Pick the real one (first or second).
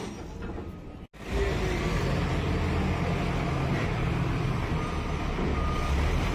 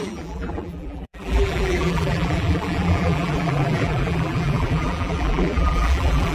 first